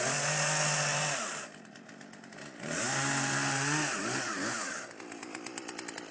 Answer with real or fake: real